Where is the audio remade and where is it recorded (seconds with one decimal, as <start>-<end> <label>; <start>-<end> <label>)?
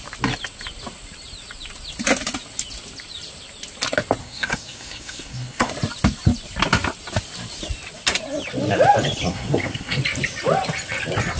0.0-4.2 recorded; 4.2-5.7 remade; 5.7-9.3 recorded; 9.3-10.0 remade; 10.0-11.4 recorded